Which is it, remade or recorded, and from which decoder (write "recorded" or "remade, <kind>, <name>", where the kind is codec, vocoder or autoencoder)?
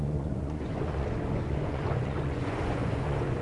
remade, vocoder, Vocos